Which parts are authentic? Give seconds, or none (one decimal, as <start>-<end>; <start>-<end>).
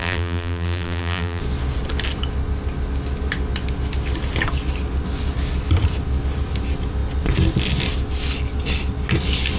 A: 1.4-9.6